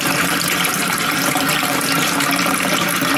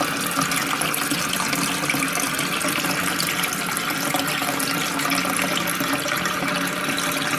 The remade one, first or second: first